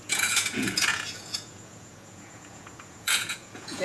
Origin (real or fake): fake